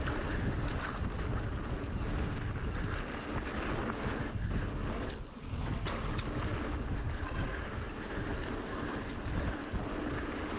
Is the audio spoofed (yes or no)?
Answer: no